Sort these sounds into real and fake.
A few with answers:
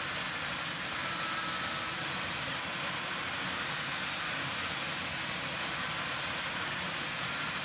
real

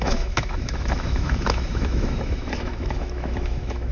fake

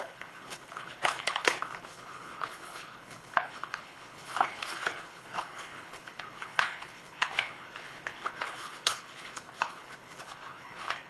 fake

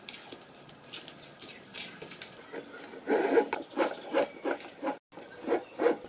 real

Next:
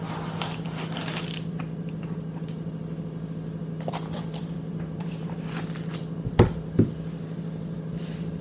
real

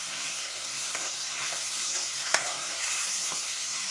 fake